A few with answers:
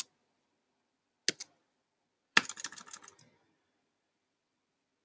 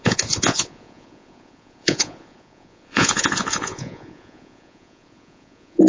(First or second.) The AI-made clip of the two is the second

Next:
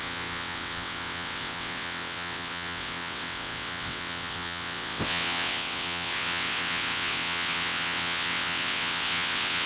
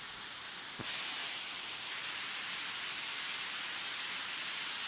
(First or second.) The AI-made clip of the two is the first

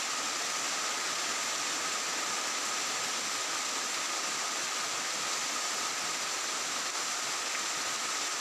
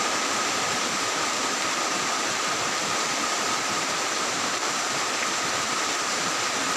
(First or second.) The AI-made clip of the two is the second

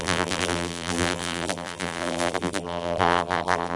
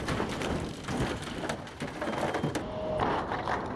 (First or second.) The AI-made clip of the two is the first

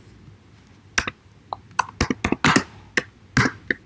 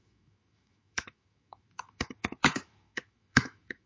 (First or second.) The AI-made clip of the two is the second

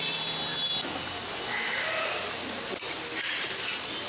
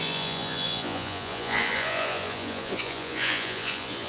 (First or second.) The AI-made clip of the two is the second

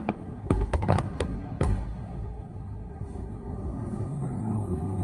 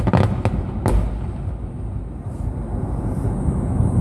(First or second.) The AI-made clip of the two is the first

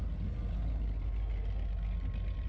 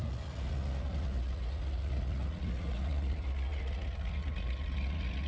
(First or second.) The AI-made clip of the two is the second